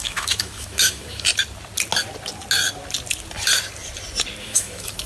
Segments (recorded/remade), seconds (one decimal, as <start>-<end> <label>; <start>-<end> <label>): 0.0-1.3 remade; 1.3-4.4 recorded; 4.4-5.1 remade